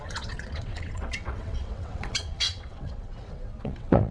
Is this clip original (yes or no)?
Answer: no